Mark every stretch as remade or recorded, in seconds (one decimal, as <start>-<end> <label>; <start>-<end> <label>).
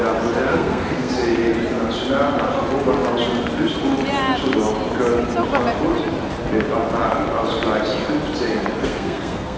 0.0-0.5 recorded; 0.5-1.1 remade; 1.1-8.8 recorded; 8.8-9.6 remade